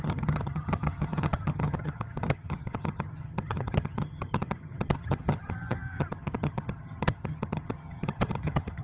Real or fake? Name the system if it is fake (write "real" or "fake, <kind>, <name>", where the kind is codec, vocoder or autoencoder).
fake, vocoder, HiFi-GAN